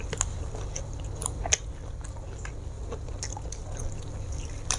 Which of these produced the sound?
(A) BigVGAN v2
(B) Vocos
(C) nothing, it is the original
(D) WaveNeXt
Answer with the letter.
C